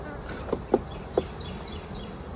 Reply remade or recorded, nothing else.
recorded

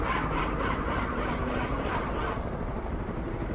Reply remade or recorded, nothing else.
recorded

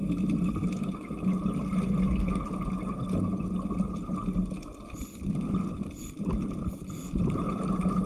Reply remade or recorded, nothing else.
recorded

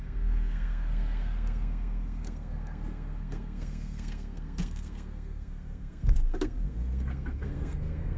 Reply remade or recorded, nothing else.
remade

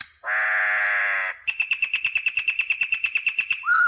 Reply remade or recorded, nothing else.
recorded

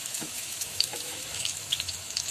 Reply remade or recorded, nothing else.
remade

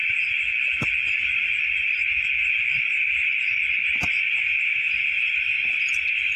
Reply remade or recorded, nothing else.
recorded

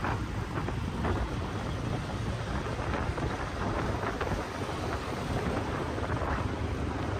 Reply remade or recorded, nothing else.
recorded